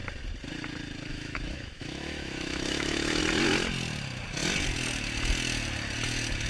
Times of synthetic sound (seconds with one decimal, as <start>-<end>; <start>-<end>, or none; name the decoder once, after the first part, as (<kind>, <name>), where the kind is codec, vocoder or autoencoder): 1.1-3.2 (autoencoder, DAC-VAE)